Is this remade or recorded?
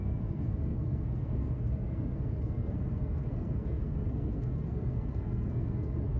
remade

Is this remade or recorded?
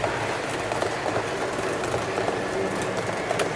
recorded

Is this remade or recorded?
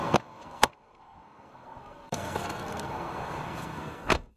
remade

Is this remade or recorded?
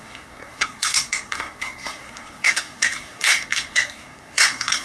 remade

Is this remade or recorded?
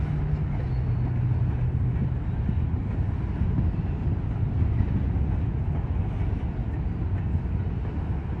recorded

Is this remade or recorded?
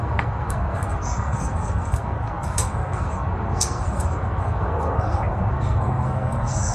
remade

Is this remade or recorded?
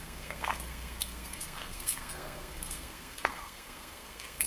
remade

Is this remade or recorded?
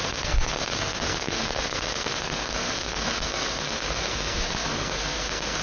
remade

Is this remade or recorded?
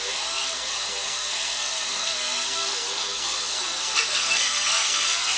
remade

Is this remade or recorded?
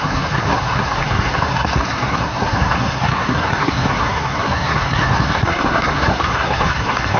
remade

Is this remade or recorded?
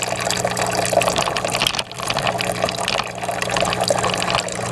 recorded